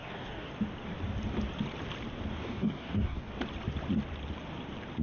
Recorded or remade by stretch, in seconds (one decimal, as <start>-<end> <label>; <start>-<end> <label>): 0.0-0.5 remade; 0.5-2.3 recorded; 2.3-3.3 remade; 3.3-5.0 recorded